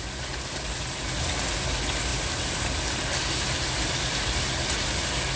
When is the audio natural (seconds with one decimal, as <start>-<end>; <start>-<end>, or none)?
0.0-5.4